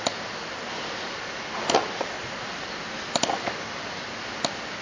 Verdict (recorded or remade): recorded